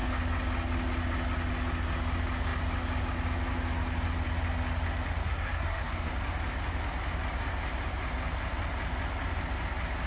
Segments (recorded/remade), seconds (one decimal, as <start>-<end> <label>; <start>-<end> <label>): 0.0-5.2 recorded; 5.2-6.1 remade; 6.1-10.1 recorded